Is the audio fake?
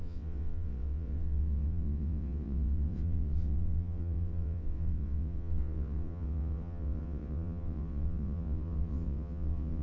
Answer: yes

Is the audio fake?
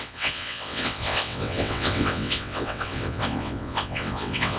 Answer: yes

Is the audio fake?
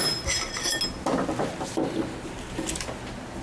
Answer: no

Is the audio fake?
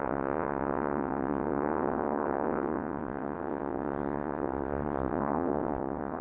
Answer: yes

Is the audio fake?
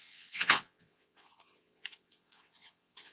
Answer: yes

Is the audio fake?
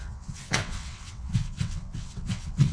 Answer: yes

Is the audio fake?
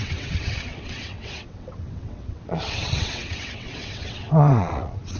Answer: yes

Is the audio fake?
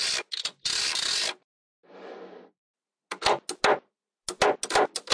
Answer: no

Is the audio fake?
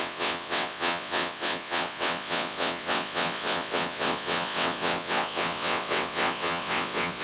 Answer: yes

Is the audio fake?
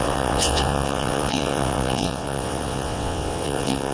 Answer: yes